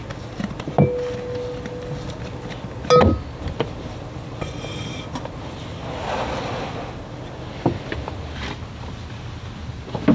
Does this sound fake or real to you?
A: real